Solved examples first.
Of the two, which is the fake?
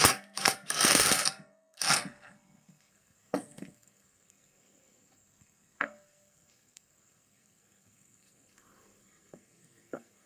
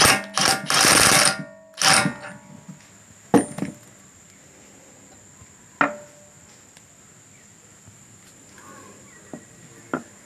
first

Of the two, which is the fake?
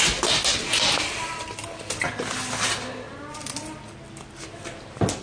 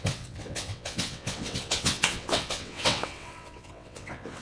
second